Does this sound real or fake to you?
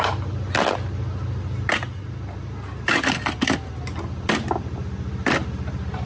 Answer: real